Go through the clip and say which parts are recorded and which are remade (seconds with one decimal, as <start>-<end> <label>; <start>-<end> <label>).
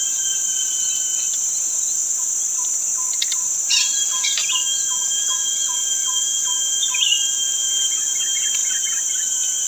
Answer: 0.0-2.0 remade; 2.0-3.3 recorded; 3.3-9.7 remade